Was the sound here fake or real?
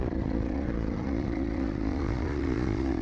fake